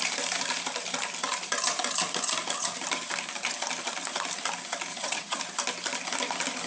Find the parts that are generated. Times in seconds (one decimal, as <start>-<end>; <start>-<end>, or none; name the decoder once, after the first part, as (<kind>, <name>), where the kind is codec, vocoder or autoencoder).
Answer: 4.9-5.4 (vocoder, HiFi-GAN)